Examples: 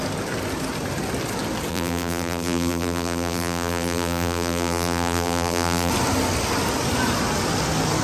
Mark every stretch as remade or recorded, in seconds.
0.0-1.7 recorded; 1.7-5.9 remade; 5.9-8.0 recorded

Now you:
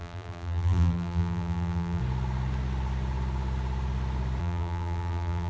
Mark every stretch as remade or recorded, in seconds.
0.0-2.0 remade; 2.0-4.4 recorded; 4.4-5.5 remade

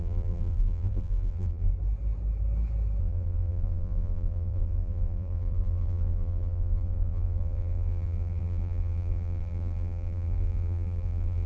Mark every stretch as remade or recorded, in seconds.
0.0-1.7 remade; 1.7-3.0 recorded; 3.0-11.5 remade

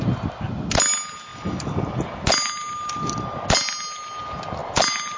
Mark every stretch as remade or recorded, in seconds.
0.0-5.2 recorded

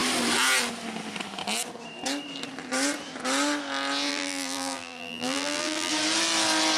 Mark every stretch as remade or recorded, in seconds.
0.0-4.1 recorded; 4.1-5.9 remade; 5.9-6.8 recorded